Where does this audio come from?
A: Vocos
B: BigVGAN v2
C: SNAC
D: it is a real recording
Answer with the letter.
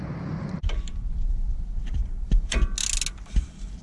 D